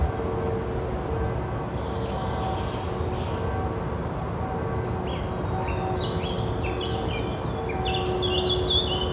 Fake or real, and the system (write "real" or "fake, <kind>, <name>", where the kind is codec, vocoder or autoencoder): real